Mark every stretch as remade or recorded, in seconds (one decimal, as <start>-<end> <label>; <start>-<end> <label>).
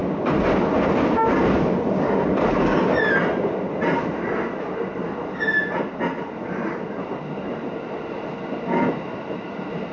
0.0-9.9 recorded